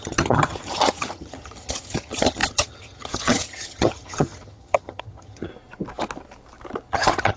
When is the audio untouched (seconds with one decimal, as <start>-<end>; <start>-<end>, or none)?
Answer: 5.5-6.9